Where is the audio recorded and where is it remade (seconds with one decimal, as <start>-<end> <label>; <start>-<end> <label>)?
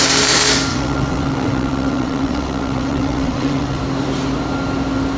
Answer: 0.0-0.7 recorded; 0.7-3.8 remade; 3.8-5.2 recorded